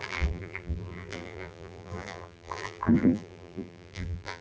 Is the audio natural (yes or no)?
no